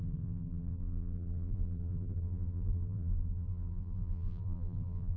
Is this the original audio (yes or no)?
no